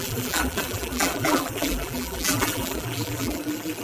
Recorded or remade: remade